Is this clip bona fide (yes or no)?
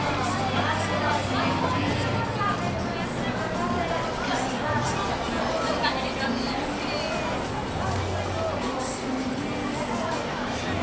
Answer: yes